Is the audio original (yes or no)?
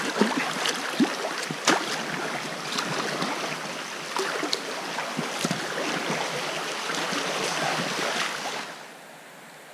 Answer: yes